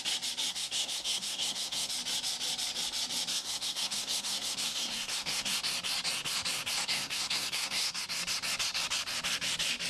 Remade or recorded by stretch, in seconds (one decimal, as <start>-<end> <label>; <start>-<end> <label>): 0.0-0.5 recorded; 0.5-1.9 remade; 1.9-3.3 recorded; 3.3-5.6 remade; 5.6-6.8 recorded; 6.8-8.0 remade; 8.0-9.9 recorded